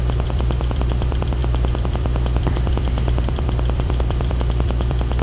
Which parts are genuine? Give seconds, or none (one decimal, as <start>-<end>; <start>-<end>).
none